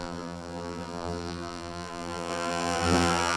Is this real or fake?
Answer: fake